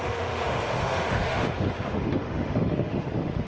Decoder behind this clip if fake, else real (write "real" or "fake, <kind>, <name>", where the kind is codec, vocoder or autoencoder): fake, autoencoder, DAC-VAE